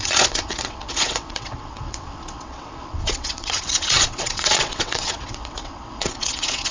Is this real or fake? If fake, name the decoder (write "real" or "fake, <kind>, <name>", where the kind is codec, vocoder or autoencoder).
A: fake, vocoder, WaveNeXt